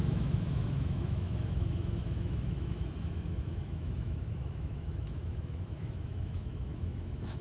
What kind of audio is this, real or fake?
fake